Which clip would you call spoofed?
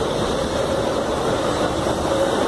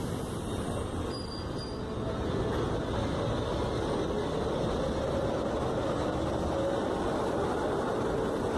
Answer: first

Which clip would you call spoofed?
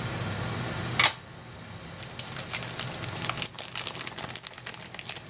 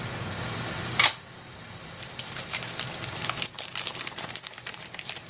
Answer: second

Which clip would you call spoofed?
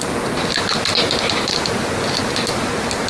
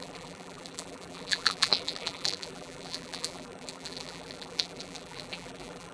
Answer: second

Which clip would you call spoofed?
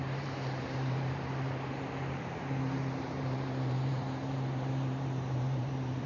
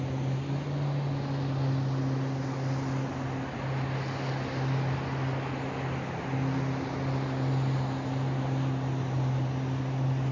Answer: first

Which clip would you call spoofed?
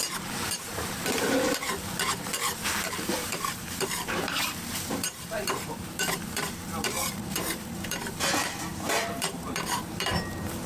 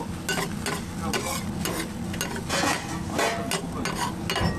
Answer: first